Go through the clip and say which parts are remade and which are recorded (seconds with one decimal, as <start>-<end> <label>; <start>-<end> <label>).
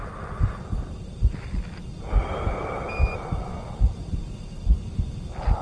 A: 0.0-5.6 recorded